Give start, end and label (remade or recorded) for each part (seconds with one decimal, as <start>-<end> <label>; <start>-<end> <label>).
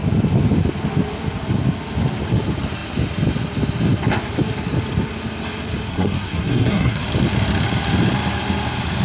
0.0-5.9 recorded; 5.9-7.0 remade; 7.0-9.0 recorded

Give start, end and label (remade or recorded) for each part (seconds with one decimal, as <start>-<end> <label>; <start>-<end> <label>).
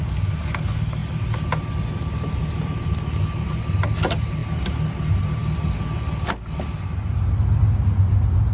0.0-8.5 recorded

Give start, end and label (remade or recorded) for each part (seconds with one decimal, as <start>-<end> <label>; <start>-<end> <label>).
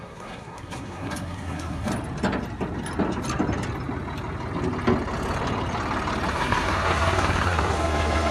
0.0-1.9 remade; 1.9-6.3 recorded; 6.3-8.3 remade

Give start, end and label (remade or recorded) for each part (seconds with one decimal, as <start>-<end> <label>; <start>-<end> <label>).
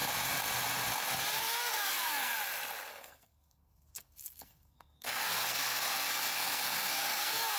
0.0-1.4 recorded; 1.4-2.3 remade; 2.3-2.9 recorded; 2.9-7.6 remade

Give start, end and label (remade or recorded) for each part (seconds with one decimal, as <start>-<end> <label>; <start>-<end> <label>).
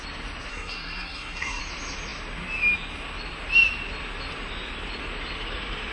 0.0-0.5 recorded; 0.5-1.6 remade; 1.6-5.9 recorded